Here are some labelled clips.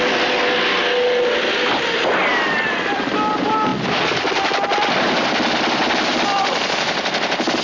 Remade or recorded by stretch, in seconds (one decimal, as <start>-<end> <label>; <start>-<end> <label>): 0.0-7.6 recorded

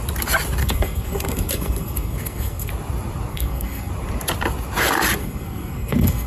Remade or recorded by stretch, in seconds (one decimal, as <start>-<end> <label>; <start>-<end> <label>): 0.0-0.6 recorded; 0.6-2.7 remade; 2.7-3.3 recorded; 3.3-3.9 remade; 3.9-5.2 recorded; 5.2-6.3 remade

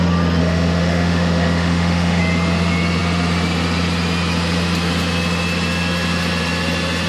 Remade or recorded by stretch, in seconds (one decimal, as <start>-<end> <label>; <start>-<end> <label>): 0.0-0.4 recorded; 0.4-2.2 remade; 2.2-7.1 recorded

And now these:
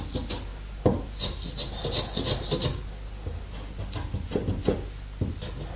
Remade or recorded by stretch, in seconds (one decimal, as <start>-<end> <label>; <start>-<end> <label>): 0.0-5.8 recorded